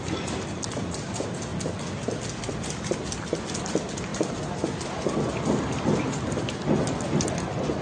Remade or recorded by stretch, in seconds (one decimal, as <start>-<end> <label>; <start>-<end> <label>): 0.0-7.8 recorded